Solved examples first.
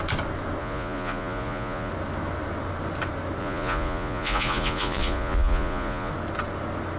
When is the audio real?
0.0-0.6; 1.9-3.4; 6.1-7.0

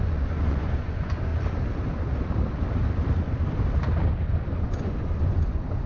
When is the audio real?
1.3-4.6

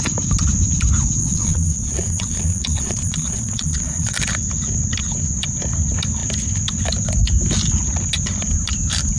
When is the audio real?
0.0-1.2; 4.1-9.2

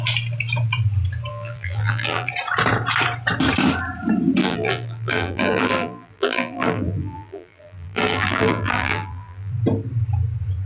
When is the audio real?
0.0-1.3; 2.3-4.4; 9.5-10.7

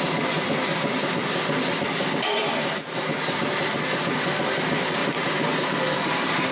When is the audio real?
0.0-0.7; 3.0-4.0; 4.5-5.0

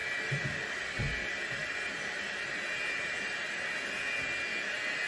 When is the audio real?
0.0-5.1

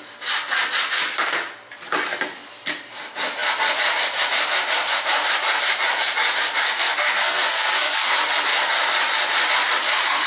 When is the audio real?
0.0-6.6; 8.1-10.3